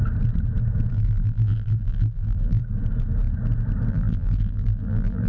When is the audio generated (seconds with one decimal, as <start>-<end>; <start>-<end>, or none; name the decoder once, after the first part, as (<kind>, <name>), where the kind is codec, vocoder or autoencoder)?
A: 0.9-2.6 (vocoder, BigVGAN v2); 3.9-5.3